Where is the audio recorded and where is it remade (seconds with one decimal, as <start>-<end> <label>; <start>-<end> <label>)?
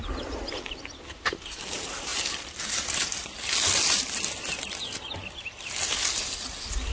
0.0-6.9 recorded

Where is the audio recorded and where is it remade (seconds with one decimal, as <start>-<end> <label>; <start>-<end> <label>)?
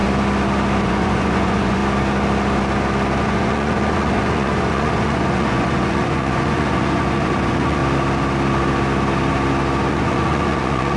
0.0-0.8 recorded; 0.8-1.8 remade; 1.8-3.2 recorded; 3.2-7.8 remade; 7.8-9.9 recorded; 9.9-11.0 remade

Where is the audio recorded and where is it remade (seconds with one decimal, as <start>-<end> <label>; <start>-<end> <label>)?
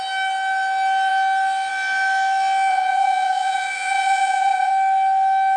0.0-2.7 recorded; 2.7-4.7 remade; 4.7-5.6 recorded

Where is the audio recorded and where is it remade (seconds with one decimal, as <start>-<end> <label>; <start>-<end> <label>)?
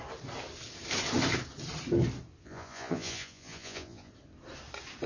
0.0-2.4 recorded; 2.4-4.1 remade; 4.1-5.1 recorded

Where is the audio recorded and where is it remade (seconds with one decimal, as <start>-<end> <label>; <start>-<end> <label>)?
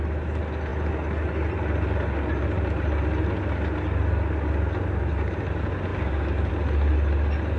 0.0-7.6 recorded